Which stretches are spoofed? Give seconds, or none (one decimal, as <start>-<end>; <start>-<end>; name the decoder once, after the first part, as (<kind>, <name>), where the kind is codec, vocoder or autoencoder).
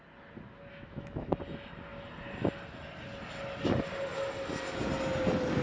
0.7-1.3 (autoencoder, DAC-VAE)